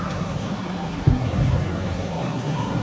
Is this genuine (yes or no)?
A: no